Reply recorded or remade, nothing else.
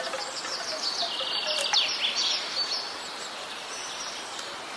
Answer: recorded